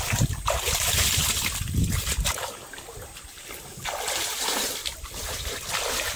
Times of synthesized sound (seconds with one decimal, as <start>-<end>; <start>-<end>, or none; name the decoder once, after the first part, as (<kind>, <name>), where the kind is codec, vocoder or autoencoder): 4.8-6.2 (vocoder, BigVGAN v2)